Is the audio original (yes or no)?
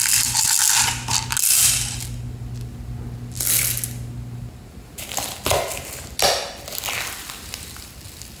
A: yes